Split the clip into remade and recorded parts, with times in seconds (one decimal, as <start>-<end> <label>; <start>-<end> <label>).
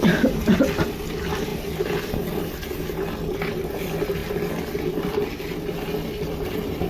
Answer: 0.0-6.9 recorded